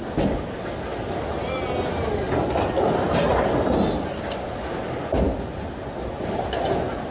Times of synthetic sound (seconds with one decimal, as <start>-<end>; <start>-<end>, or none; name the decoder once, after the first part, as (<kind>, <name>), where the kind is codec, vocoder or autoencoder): none

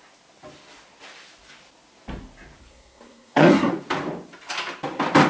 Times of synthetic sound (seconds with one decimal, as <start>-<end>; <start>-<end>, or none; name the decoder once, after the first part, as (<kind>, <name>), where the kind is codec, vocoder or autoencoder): 2.6-3.7 (codec, SNAC)

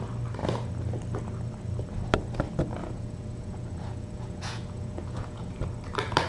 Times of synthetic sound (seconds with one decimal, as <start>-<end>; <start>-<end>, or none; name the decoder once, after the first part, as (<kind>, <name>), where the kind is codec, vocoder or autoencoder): 2.8-5.5 (vocoder, Vocos)

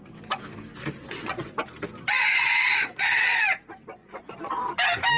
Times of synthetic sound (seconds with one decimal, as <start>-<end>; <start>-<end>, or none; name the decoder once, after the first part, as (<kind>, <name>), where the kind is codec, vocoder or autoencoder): 1.0-1.5 (vocoder, Vocos); 2.3-3.4; 4.0-4.6

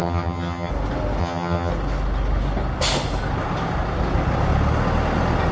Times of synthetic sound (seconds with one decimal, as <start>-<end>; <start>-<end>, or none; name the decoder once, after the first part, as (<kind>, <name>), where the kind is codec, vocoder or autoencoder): 0.0-0.7 (vocoder, HiFi-GAN); 1.2-1.7

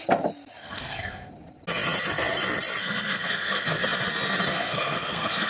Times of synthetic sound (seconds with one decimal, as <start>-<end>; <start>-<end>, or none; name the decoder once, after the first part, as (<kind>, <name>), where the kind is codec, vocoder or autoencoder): 0.6-1.3 (codec, SNAC); 2.8-3.8; 4.5-5.5